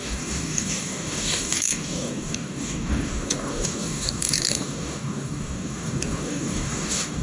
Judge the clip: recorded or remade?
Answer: remade